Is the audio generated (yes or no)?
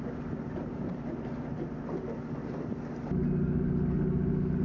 no